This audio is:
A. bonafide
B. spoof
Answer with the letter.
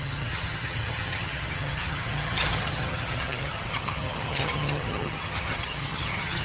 B